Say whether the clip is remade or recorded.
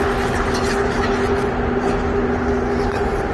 recorded